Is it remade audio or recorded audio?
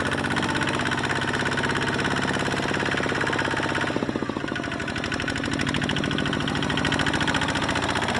recorded